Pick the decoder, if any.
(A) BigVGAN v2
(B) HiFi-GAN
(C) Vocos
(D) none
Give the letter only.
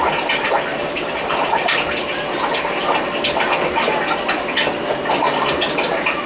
D